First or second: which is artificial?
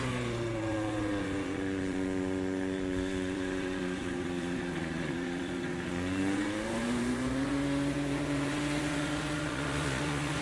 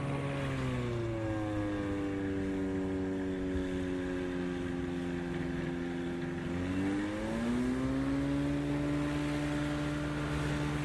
first